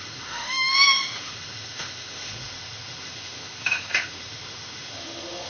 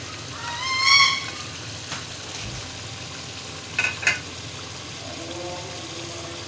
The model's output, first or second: first